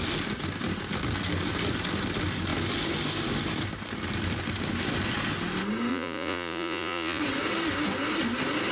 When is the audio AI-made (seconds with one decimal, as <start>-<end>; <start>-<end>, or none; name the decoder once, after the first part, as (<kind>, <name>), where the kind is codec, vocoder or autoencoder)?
5.9-7.2 (vocoder, Vocos)

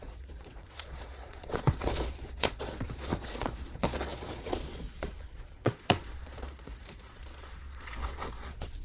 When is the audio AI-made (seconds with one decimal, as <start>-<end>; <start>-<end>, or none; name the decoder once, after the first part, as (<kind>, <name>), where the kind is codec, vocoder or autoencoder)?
0.0-8.8 (vocoder, Vocos)